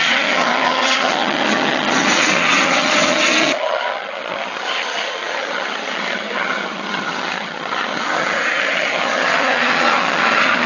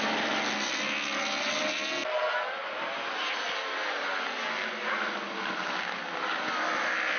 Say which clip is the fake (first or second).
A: first